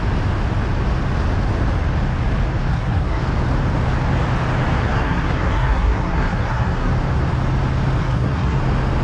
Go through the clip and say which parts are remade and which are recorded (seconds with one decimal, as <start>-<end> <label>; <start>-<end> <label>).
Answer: 0.0-2.7 recorded; 2.7-3.2 remade; 3.2-4.8 recorded; 4.8-6.9 remade; 6.9-8.0 recorded; 8.0-8.6 remade; 8.6-9.0 recorded